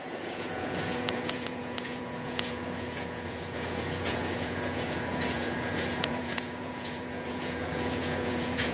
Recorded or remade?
remade